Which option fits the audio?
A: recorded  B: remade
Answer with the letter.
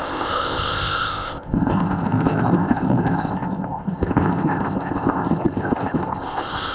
B